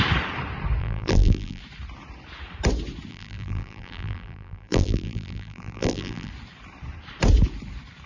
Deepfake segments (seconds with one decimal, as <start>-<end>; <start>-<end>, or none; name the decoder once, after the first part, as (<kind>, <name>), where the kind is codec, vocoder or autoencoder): 0.8-1.6 (vocoder, BigVGAN v2); 3.1-6.3